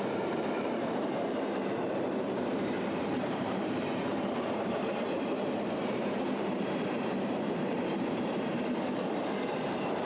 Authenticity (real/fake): fake